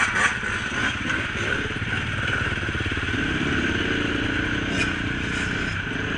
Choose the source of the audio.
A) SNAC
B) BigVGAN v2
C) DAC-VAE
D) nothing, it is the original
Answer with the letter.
D